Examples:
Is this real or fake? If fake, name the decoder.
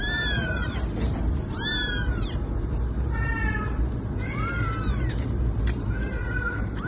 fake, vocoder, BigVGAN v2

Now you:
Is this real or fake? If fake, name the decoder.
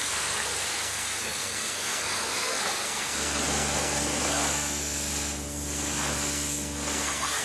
fake, codec, SNAC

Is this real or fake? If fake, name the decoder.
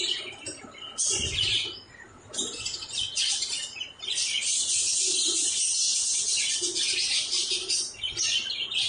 real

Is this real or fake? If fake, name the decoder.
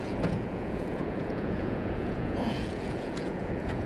fake, vocoder, Vocos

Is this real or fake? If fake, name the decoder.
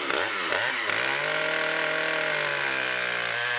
real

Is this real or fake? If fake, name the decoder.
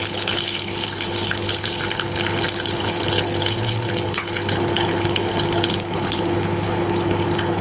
fake, codec, HILCodec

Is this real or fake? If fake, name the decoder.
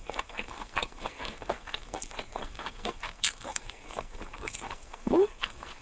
fake, codec, SNAC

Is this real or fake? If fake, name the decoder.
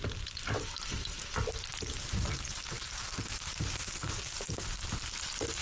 real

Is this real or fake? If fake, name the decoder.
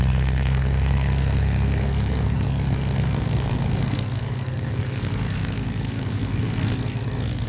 fake, codec, SNAC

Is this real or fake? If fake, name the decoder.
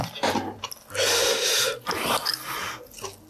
real